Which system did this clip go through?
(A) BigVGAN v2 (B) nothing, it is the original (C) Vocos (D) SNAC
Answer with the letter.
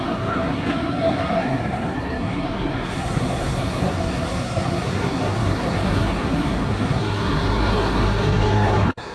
D